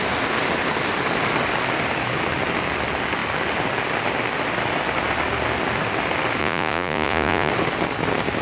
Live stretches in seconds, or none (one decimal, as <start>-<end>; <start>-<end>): 0.0-6.4; 7.5-8.4

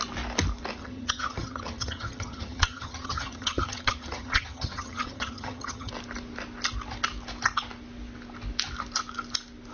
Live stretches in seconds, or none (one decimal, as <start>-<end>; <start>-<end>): 0.0-0.8; 5.9-9.7

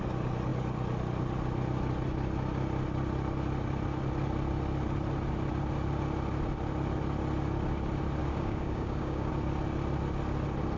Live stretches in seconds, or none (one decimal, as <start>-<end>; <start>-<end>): 0.0-8.2; 9.3-10.8

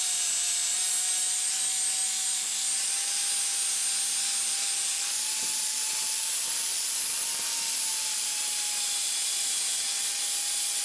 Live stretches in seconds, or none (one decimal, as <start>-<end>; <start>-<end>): 0.0-10.8

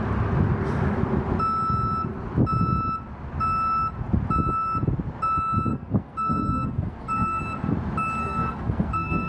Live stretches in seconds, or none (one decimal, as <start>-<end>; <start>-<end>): 0.0-5.7; 7.4-8.2

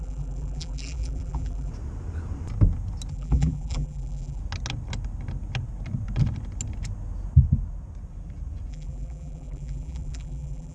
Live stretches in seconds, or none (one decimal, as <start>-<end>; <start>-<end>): 1.7-3.1; 4.4-8.7

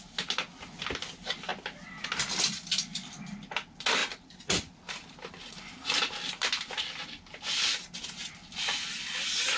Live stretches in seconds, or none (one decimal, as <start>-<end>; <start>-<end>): 0.0-9.6